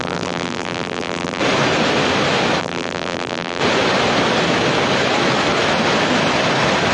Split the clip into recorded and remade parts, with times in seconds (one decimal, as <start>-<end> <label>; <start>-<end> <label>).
0.0-1.4 remade; 1.4-2.6 recorded; 2.6-3.6 remade; 3.6-6.9 recorded